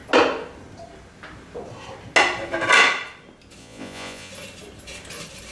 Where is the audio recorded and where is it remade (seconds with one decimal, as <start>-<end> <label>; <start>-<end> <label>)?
0.0-3.6 recorded; 3.6-4.3 remade; 4.3-5.5 recorded